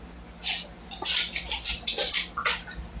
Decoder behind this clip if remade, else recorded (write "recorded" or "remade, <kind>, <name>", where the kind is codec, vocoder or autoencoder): recorded